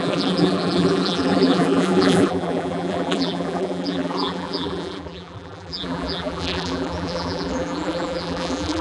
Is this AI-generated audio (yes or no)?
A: yes